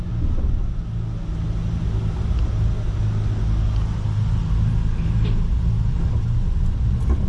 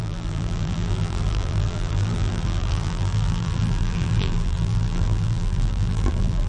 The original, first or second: first